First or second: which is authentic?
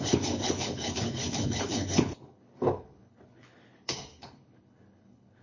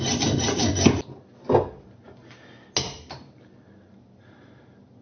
second